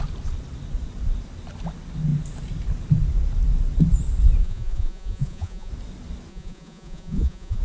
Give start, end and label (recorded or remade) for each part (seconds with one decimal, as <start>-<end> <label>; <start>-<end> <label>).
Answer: 0.0-4.4 recorded; 4.4-5.7 remade; 5.7-6.3 recorded; 6.3-7.6 remade